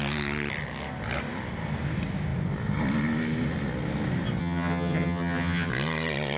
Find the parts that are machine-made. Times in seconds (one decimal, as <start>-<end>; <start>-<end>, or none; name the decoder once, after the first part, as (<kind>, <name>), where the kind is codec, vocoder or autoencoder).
4.4-5.7 (vocoder, HiFi-GAN)